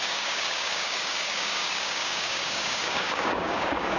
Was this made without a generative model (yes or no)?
no